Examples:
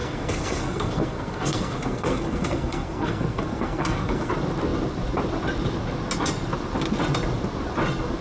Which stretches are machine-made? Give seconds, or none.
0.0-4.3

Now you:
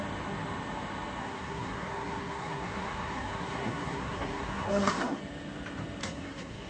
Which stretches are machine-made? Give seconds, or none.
1.2-5.2; 6.0-6.7

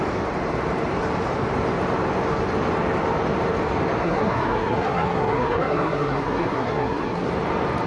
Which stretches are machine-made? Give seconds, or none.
4.0-7.3

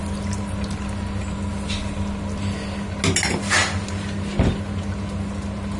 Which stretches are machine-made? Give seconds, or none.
none

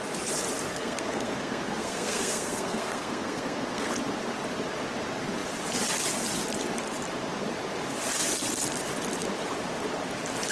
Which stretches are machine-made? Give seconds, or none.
0.7-3.9

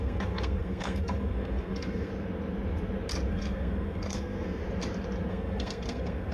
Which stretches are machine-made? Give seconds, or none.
0.0-2.1; 3.3-4.6; 5.3-6.3

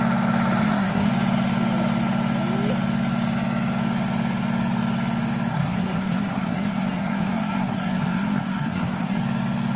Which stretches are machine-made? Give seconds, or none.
0.6-1.1; 5.5-9.2